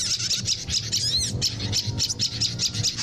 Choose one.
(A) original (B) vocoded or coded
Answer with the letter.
A